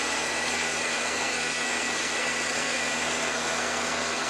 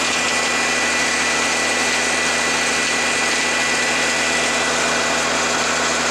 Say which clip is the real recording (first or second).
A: second